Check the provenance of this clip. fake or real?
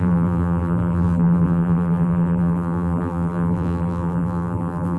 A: fake